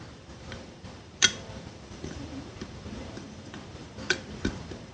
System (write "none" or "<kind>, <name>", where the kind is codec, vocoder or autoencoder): vocoder, BigVGAN v2